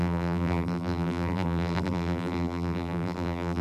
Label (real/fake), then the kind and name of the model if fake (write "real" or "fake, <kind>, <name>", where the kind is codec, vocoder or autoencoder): fake, vocoder, BigVGAN v2